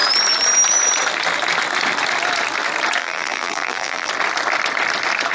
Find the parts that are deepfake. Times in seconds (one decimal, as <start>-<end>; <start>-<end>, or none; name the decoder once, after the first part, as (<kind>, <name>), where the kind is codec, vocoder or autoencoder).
3.0-4.1 (vocoder, BigVGAN v2)